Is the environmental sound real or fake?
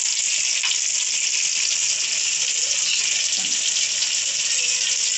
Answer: real